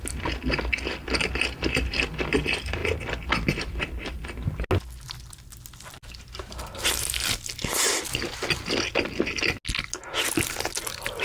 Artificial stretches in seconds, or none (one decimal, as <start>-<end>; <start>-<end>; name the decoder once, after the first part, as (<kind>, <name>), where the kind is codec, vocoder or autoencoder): none